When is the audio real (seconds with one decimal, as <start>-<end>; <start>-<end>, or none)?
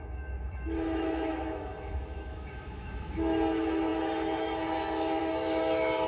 none